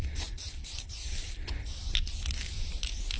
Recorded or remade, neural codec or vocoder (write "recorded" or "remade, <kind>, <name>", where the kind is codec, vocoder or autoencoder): recorded